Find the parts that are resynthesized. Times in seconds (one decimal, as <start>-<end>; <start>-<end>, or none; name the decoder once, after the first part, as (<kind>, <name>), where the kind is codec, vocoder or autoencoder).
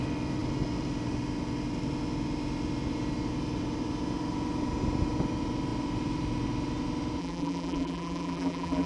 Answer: 7.2-8.9 (vocoder, BigVGAN v2)